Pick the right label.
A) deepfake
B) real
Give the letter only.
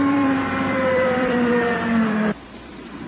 A